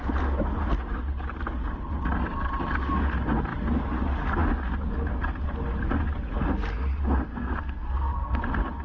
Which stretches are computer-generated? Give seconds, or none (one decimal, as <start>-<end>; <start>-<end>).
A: 7.3-8.4